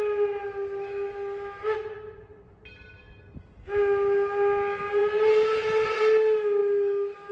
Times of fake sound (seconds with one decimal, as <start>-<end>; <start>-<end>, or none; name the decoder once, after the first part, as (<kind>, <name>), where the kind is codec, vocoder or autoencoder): none